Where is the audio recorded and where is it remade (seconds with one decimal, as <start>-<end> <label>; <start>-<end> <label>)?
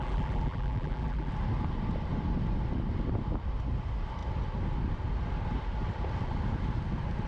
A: 0.0-1.3 remade; 1.3-7.3 recorded